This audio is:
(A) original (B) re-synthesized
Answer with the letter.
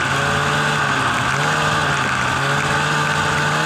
A